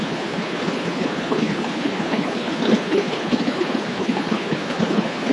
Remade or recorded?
remade